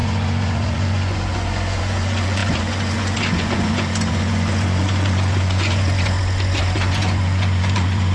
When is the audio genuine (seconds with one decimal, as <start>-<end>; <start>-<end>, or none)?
none